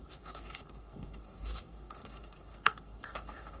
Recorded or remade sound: remade